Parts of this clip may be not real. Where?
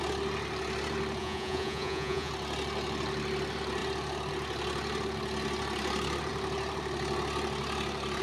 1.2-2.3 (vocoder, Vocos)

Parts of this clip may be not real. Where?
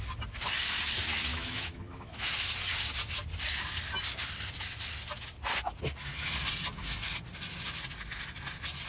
1.3-2.3 (autoencoder, DAC-VAE)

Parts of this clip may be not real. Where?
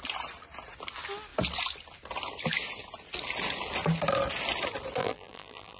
5.0-5.8 (vocoder, BigVGAN v2)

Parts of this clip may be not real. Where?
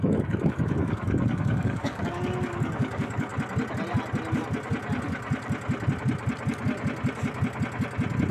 0.0-3.3 (codec, DAC)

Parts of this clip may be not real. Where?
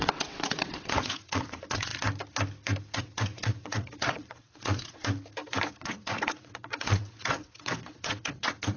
0.0-1.9 (vocoder, WaveNeXt); 3.0-5.0; 5.8-8.8